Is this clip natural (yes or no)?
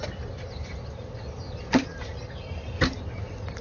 yes